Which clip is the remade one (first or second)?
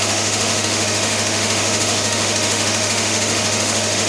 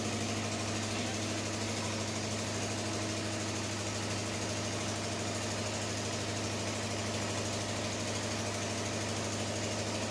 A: first